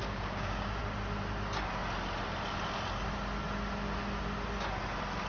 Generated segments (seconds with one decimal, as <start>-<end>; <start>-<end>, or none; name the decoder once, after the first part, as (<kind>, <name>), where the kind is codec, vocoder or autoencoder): 0.0-0.8 (codec, DAC)